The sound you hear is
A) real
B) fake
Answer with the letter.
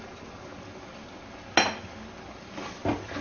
A